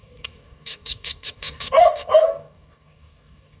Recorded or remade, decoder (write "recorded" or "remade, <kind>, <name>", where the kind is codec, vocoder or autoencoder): remade, codec, DAC